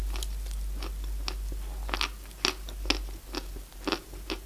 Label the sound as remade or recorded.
recorded